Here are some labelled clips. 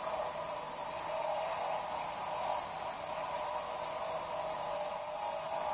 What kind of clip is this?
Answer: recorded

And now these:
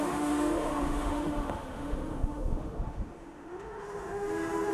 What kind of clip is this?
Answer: remade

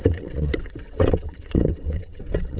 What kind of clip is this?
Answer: remade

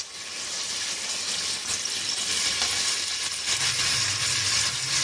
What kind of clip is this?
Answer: recorded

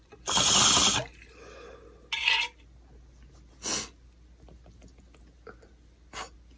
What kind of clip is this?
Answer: recorded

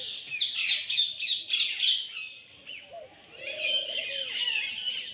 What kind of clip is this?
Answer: recorded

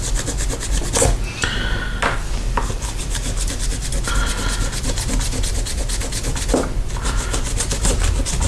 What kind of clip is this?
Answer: recorded